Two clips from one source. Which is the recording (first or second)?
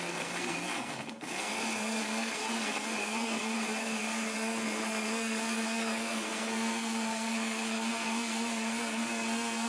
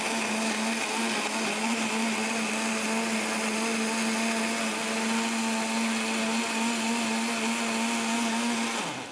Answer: second